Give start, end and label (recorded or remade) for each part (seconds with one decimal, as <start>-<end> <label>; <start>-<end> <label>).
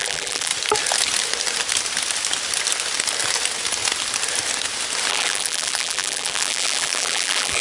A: 0.0-0.5 remade; 0.5-5.1 recorded; 5.1-7.6 remade